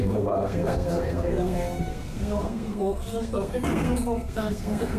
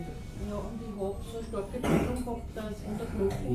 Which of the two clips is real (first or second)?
second